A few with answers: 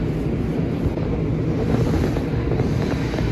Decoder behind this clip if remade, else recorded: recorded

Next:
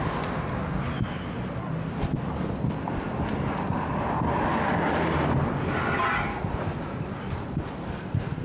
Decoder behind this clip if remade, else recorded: recorded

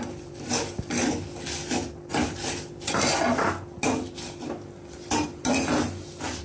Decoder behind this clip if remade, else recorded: recorded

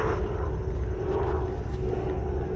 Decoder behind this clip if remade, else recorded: recorded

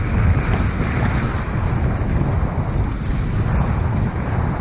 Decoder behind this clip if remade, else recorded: recorded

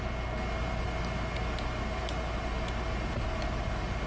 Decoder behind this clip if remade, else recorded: recorded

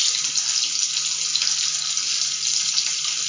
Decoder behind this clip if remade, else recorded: recorded